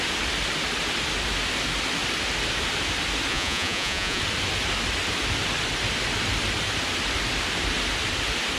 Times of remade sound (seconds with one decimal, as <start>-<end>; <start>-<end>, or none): 3.3-4.2